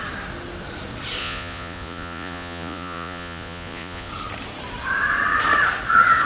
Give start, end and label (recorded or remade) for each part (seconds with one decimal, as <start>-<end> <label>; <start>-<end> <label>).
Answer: 0.0-1.2 recorded; 1.2-4.1 remade; 4.1-6.3 recorded